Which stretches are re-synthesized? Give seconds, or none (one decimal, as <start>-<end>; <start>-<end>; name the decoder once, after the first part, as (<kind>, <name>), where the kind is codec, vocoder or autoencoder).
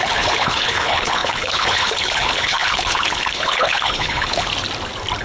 0.0-4.5 (codec, HILCodec)